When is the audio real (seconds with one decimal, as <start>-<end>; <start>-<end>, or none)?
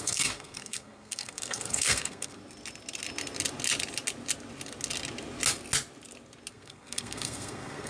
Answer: 2.4-6.5